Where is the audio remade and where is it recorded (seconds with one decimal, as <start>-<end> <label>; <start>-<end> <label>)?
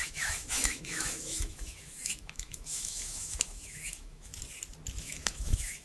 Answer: 0.0-4.3 remade; 4.3-5.0 recorded; 5.0-5.8 remade